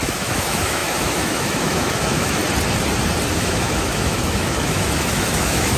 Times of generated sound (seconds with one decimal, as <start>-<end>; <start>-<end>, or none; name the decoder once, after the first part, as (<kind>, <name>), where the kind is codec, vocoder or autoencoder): 0.0-2.4 (autoencoder, DAC-VAE); 3.3-5.8

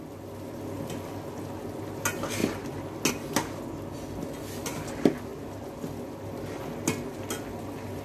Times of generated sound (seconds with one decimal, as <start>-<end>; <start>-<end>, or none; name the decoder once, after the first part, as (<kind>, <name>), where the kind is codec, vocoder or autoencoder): none

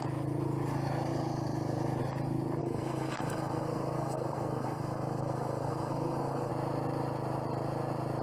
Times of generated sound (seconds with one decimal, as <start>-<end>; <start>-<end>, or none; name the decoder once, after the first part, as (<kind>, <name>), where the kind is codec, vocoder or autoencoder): 2.6-6.5 (codec, SNAC)

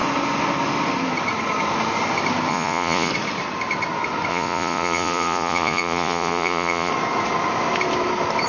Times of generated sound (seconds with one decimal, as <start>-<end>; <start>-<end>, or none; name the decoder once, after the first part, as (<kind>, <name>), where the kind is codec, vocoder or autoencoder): 2.5-3.1 (vocoder, Vocos); 4.3-6.9

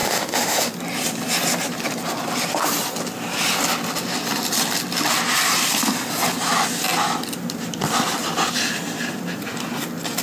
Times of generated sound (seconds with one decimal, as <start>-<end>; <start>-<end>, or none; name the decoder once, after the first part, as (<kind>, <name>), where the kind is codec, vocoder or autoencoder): 0.0-0.7 (autoencoder, DAC-VAE)